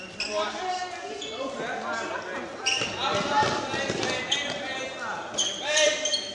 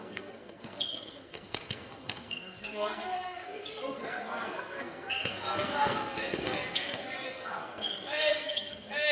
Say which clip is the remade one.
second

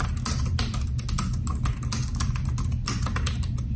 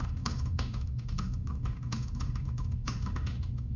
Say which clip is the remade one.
second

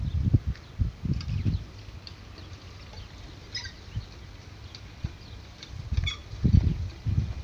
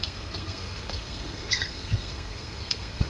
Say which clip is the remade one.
second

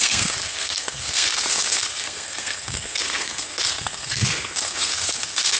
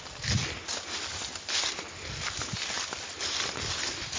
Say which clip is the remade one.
first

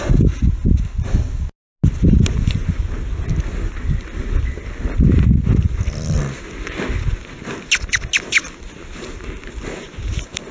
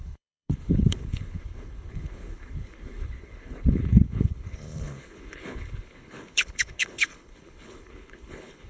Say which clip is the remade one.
second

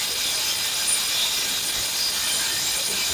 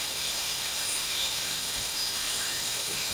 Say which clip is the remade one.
second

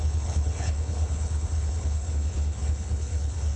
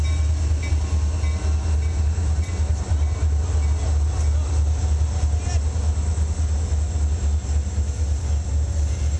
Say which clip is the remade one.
first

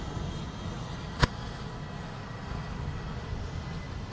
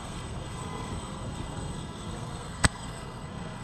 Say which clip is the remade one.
second